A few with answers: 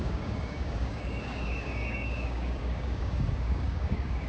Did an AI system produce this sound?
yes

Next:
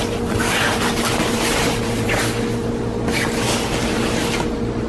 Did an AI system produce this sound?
no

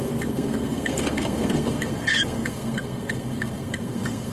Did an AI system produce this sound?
yes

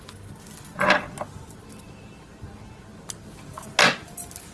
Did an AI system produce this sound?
no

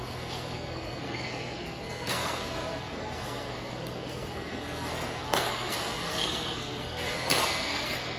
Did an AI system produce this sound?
yes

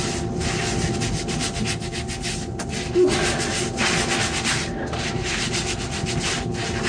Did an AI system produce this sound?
no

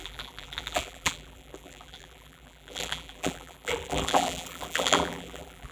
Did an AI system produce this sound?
yes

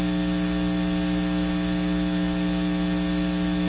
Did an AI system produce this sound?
no